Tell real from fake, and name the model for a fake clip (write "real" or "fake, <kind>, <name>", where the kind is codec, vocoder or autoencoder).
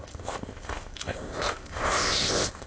fake, codec, ZipCodec